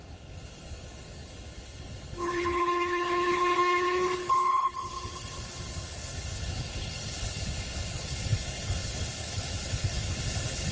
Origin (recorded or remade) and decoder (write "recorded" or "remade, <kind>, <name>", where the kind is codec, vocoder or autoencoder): remade, codec, HILCodec